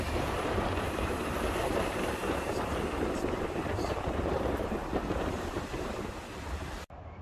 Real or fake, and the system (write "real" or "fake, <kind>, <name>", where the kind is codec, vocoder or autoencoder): fake, vocoder, BigVGAN v2